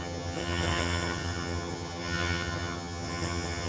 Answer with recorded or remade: remade